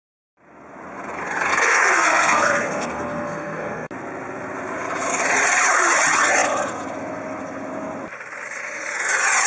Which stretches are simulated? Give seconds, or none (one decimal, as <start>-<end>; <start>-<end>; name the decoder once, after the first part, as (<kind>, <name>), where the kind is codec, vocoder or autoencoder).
1.5-3.9 (codec, SNAC)

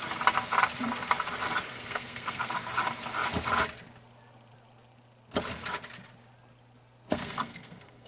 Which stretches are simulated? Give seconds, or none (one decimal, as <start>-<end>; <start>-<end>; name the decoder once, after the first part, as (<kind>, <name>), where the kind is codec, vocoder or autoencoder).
1.7-2.5 (codec, SNAC); 7.1-8.1